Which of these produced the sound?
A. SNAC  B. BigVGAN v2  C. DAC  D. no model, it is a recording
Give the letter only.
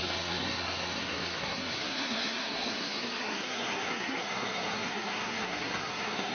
A